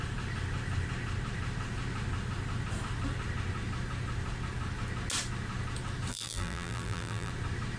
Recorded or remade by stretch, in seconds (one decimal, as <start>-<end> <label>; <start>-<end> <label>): 0.0-6.1 recorded; 6.1-7.3 remade; 7.3-7.8 recorded